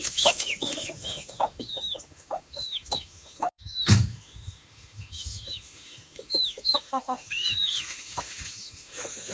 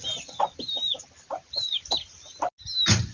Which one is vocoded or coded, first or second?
first